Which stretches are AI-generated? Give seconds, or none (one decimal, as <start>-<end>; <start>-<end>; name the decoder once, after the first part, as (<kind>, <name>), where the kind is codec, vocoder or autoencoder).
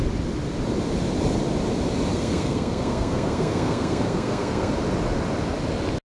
2.1-4.7 (codec, SNAC)